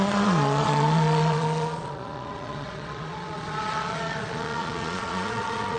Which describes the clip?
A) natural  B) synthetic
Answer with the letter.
B